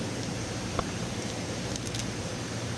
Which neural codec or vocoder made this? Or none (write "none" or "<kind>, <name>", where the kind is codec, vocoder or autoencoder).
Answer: vocoder, BigVGAN v2